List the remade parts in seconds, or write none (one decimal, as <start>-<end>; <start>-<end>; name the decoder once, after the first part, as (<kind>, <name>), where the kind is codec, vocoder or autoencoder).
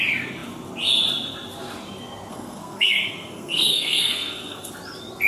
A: 2.3-4.7 (codec, SNAC)